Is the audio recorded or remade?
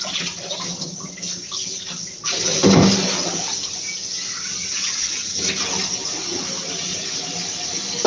recorded